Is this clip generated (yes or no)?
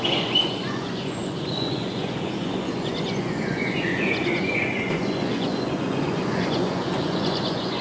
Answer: yes